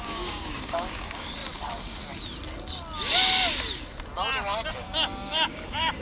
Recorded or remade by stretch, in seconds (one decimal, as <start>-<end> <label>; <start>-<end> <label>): 0.0-1.4 remade; 1.4-4.7 recorded; 4.7-6.0 remade